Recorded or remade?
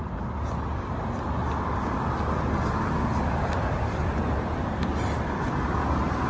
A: recorded